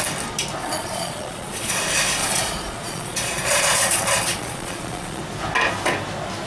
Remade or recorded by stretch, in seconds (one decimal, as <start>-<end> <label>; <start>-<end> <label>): 0.0-0.6 recorded; 0.6-1.8 remade; 1.8-2.2 recorded; 2.2-5.2 remade; 5.2-6.5 recorded